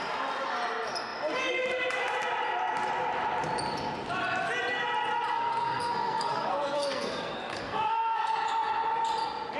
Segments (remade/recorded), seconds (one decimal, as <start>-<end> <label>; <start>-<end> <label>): 0.0-5.3 recorded; 5.3-8.3 remade; 8.3-9.6 recorded